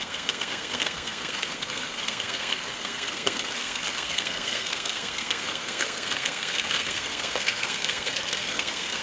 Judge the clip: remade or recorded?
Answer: remade